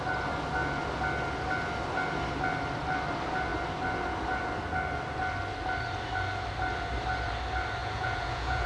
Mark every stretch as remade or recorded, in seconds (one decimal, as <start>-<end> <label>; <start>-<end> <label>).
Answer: 0.0-7.8 recorded; 7.8-8.7 remade